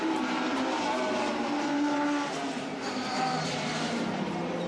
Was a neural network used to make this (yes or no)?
yes